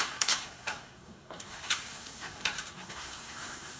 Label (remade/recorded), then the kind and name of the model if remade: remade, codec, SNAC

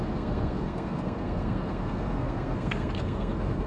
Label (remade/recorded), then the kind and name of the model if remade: remade, codec, SNAC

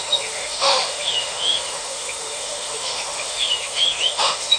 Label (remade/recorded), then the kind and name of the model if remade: remade, autoencoder, DAC-VAE